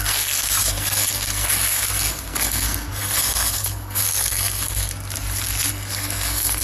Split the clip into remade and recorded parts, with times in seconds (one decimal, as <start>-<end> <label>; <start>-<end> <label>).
0.0-4.9 remade; 4.9-5.7 recorded; 5.7-6.6 remade